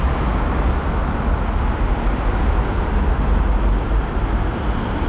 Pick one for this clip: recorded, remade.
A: recorded